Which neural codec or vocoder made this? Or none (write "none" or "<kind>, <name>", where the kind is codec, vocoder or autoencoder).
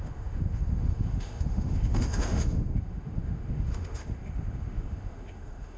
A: autoencoder, DAC-VAE